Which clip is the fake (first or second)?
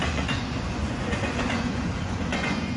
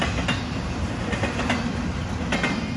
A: first